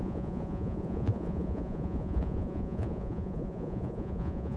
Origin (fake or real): fake